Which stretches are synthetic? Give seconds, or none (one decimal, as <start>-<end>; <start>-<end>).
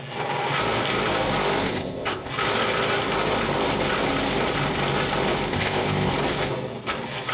1.7-2.3; 5.5-6.1